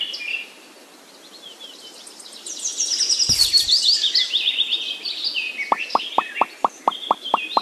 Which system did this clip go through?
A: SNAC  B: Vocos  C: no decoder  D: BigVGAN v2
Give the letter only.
C